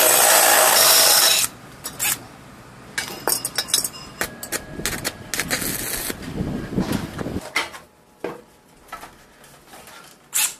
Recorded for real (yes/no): yes